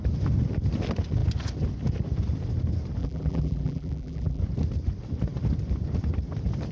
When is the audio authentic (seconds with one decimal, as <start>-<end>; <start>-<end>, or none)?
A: 0.0-3.0; 4.4-6.7